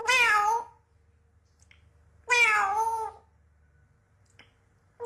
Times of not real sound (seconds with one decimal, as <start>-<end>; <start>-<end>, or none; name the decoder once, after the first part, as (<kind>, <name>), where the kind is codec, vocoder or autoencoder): none